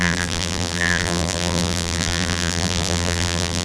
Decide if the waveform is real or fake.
fake